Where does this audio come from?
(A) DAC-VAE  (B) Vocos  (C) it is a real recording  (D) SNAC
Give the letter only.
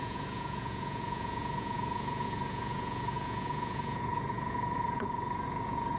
B